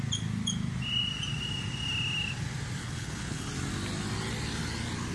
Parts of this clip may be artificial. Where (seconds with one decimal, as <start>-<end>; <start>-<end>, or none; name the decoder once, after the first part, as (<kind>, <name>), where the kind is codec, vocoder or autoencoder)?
2.8-3.5 (codec, HILCodec)